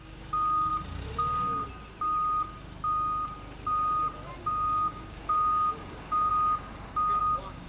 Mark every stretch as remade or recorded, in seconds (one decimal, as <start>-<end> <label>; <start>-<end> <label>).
0.0-0.7 remade; 0.7-4.4 recorded; 4.4-6.3 remade; 6.3-7.2 recorded; 7.2-7.7 remade